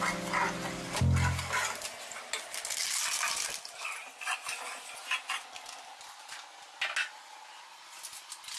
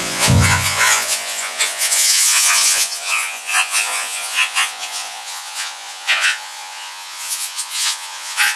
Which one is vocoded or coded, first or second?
second